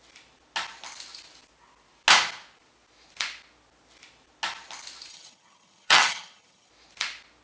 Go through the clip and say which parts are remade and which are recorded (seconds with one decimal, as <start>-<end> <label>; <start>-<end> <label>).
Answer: 0.0-5.1 recorded; 5.1-6.7 remade; 6.7-7.4 recorded